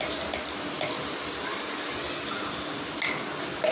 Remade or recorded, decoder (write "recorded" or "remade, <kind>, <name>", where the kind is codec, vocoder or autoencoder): recorded